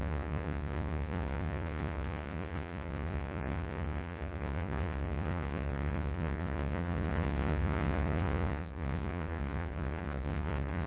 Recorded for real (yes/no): no